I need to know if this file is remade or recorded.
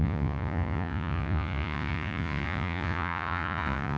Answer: remade